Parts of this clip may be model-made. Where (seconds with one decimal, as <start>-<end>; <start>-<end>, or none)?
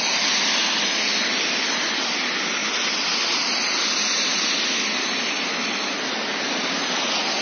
none